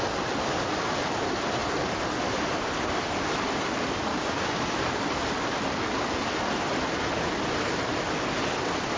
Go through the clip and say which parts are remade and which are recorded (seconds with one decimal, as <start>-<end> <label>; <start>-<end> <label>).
0.0-4.1 recorded; 4.1-4.6 remade; 4.6-9.0 recorded